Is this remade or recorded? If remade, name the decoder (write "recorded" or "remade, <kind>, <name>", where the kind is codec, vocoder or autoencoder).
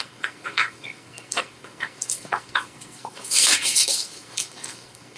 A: remade, codec, SNAC